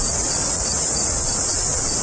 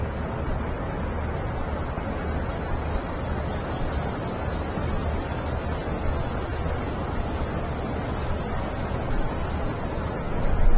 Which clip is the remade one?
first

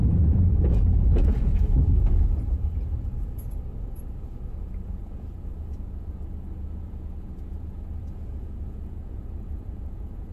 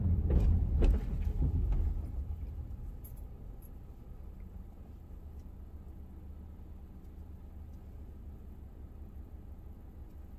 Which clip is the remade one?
first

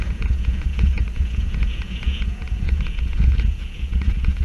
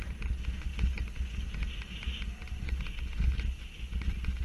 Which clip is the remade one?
first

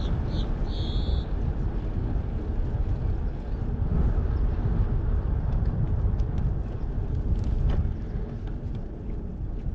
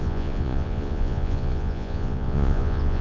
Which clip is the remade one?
second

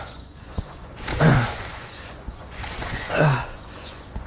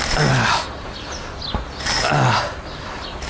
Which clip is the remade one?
first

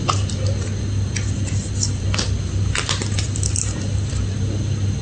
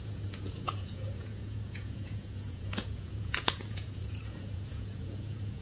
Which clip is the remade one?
second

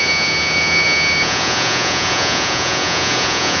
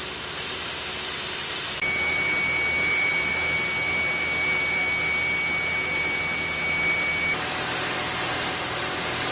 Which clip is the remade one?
first